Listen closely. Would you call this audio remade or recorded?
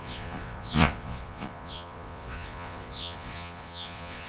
remade